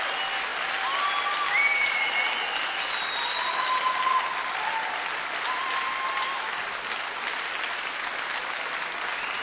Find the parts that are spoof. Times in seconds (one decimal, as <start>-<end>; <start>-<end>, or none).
none